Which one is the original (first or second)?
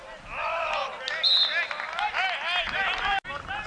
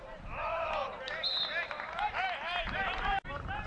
first